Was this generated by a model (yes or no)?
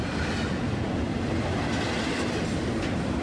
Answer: no